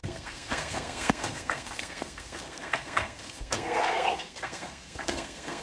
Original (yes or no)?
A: no